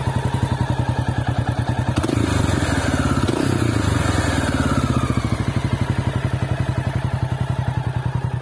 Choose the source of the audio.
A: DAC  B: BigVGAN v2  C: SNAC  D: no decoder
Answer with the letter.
D